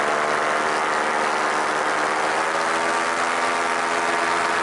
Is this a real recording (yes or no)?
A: yes